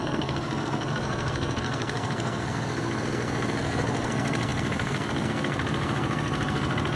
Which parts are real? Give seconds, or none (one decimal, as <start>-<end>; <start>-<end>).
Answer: none